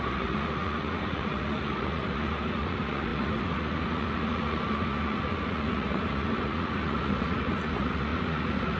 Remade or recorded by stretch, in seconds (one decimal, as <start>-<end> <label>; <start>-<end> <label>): 0.0-8.8 remade